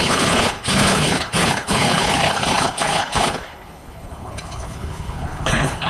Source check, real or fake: fake